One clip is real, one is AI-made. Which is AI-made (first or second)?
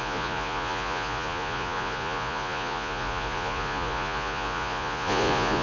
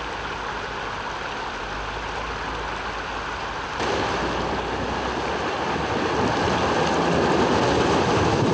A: first